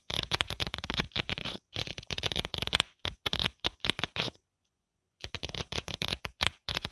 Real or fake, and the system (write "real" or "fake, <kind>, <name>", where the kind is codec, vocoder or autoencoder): fake, vocoder, Vocos